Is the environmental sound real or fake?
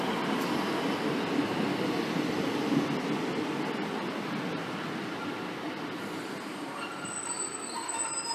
real